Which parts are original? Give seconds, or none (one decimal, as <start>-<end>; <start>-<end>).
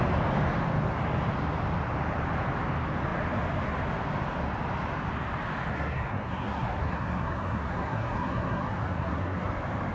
0.0-5.7; 9.5-9.9